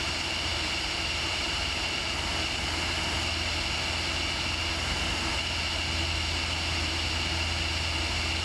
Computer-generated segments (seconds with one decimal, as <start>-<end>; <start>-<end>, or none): 0.5-1.9

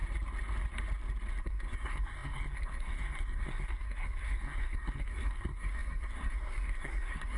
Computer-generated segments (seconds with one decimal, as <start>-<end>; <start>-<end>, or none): 1.4-7.4

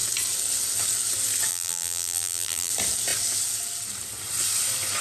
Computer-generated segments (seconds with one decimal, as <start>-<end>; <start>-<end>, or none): 1.5-2.7

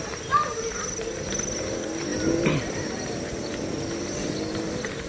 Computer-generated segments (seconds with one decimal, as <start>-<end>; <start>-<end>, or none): none

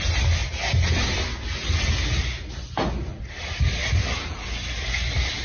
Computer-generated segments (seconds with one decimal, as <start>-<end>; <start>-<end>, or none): 3.1-4.8

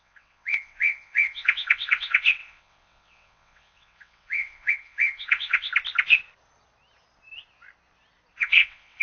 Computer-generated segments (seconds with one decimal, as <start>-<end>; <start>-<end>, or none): 0.0-5.7; 8.4-9.0

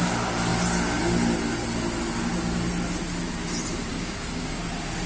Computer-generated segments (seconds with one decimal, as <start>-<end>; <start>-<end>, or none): 3.9-4.6